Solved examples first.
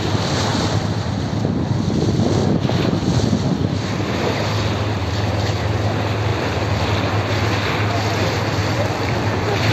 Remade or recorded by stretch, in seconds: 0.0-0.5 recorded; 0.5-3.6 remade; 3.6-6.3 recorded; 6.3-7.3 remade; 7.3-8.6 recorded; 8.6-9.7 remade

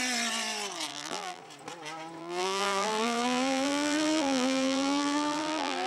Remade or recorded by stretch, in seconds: 0.0-0.9 recorded; 0.9-1.4 remade; 1.4-2.2 recorded; 2.2-5.9 remade

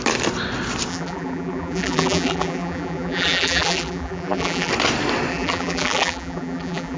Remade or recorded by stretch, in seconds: 0.0-0.9 recorded; 0.9-4.7 remade; 4.7-5.3 recorded; 5.3-7.0 remade

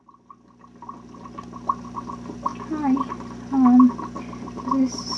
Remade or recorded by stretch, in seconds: 0.0-5.2 recorded

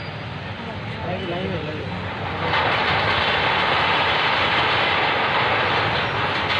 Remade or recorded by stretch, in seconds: 0.0-6.6 recorded